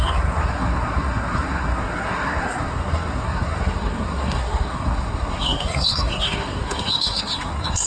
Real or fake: fake